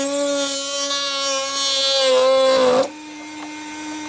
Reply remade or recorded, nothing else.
recorded